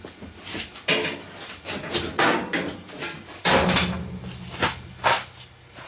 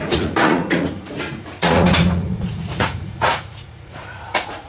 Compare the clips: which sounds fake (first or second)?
second